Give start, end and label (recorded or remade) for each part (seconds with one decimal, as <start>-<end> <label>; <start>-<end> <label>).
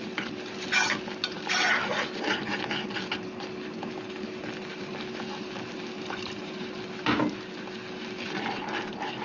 0.0-9.2 recorded